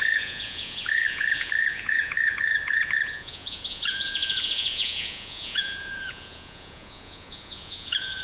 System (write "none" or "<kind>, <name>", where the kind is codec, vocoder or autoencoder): vocoder, Vocos